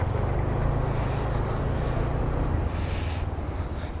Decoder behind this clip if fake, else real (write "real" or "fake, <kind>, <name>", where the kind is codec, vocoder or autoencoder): real